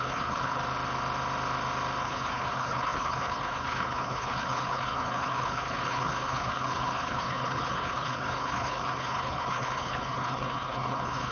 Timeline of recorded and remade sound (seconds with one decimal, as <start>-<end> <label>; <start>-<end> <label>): 0.0-0.6 remade; 0.6-2.0 recorded; 2.0-11.3 remade